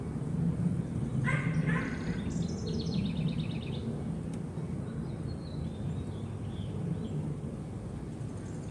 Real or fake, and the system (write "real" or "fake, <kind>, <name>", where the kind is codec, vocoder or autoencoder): real